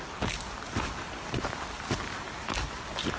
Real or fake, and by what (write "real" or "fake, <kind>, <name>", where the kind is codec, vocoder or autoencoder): real